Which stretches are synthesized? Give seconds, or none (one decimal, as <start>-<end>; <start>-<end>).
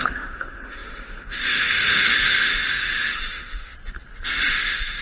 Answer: 0.0-3.7; 4.5-5.0